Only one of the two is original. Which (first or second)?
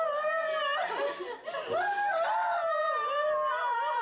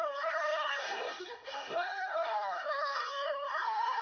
first